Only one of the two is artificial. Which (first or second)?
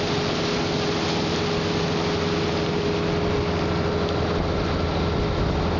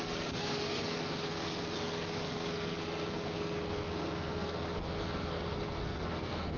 second